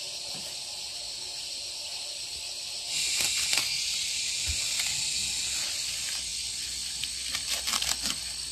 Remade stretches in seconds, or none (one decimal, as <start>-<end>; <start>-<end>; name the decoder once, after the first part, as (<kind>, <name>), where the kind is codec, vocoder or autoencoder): none